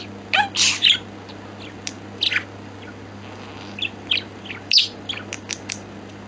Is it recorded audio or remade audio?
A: recorded